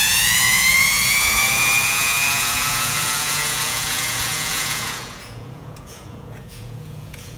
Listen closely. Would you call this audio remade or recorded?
remade